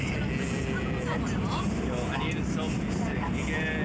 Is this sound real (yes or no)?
yes